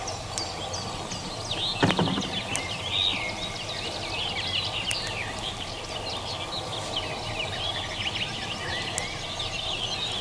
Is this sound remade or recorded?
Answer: recorded